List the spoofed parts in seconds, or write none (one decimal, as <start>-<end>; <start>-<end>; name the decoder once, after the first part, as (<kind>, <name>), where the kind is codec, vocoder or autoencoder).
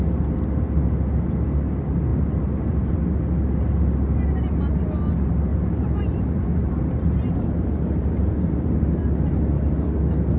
2.1-3.0 (vocoder, BigVGAN v2); 5.5-9.0